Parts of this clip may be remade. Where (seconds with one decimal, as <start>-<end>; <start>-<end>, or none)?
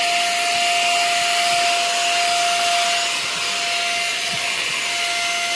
4.1-4.8